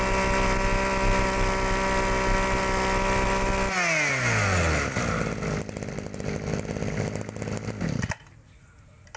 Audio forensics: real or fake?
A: real